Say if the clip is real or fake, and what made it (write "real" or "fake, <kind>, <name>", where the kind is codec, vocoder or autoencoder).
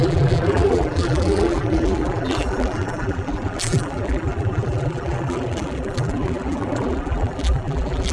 fake, vocoder, BigVGAN v2